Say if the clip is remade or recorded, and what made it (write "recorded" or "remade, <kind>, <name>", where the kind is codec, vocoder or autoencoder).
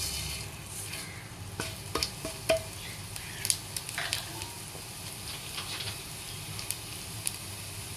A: recorded